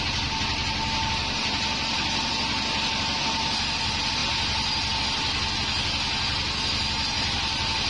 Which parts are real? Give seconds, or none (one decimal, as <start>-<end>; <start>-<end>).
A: 0.0-7.9